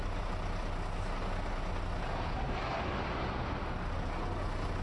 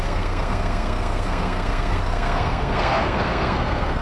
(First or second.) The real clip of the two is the first